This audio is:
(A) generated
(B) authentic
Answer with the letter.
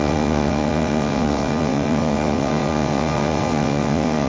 A